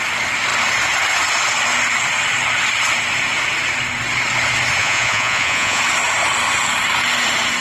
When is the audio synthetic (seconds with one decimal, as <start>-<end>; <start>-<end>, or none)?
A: 4.8-5.8